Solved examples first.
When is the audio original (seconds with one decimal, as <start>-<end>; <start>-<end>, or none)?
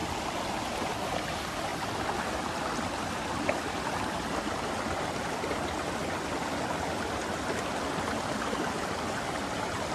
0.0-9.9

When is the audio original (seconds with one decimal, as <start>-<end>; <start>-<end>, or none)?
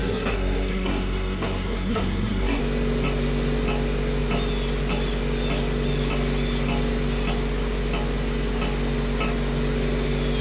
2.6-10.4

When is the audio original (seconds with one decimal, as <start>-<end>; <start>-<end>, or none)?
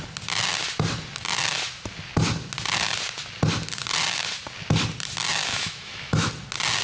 0.0-5.5; 6.3-6.8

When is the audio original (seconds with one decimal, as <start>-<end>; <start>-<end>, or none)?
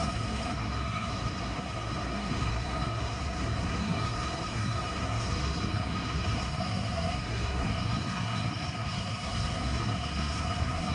none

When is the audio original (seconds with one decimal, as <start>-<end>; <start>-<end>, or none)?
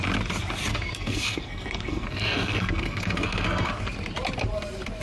0.0-0.7; 3.7-5.0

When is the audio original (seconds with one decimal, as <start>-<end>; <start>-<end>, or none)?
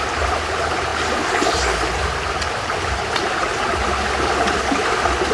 0.0-5.3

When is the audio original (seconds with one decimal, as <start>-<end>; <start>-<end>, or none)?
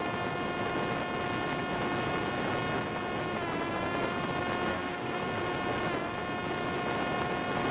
0.0-4.7; 5.2-7.7